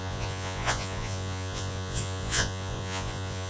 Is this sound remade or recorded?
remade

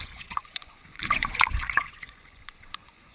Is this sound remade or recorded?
remade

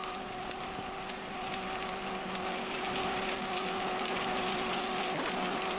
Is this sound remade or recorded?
recorded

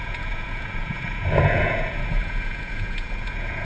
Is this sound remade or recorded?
remade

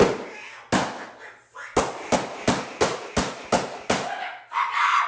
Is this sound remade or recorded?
recorded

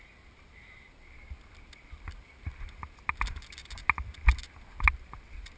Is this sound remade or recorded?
recorded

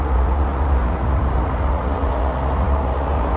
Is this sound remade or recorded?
remade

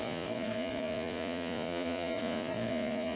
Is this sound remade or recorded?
remade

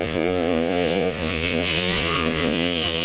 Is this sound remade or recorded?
remade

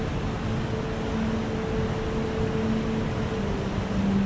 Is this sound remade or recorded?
recorded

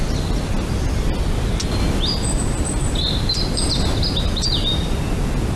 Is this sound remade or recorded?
recorded